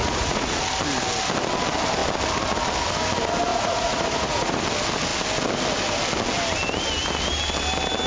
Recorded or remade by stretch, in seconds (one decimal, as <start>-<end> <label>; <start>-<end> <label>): 0.0-0.6 remade; 0.6-3.5 recorded; 3.5-4.6 remade; 4.6-8.1 recorded

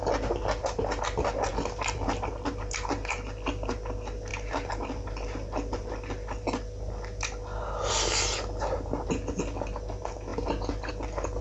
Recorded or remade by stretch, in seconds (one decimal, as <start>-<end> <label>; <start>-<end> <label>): 0.0-11.4 recorded

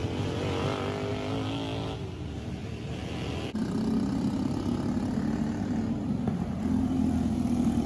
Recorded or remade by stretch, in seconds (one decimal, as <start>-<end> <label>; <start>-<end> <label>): 0.0-7.9 recorded

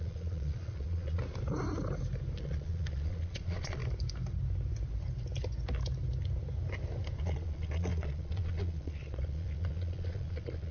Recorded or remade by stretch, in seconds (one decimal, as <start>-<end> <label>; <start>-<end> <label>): 0.0-1.2 remade; 1.2-2.4 recorded; 2.4-3.8 remade; 3.8-7.2 recorded; 7.2-10.7 remade

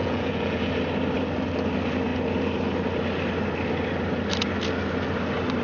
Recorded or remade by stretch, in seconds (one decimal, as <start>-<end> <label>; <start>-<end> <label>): 0.0-0.7 remade; 0.7-5.6 recorded

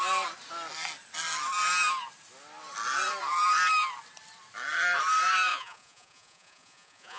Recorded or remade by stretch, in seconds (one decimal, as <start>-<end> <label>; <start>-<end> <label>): 0.0-5.5 recorded; 5.5-7.2 remade

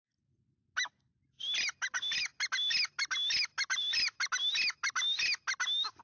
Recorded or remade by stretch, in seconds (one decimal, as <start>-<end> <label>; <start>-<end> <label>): 0.0-6.0 recorded